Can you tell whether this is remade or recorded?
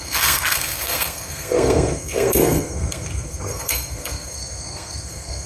remade